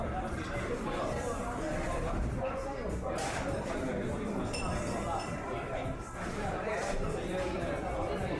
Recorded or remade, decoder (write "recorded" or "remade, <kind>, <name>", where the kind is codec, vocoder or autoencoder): remade, vocoder, BigVGAN v2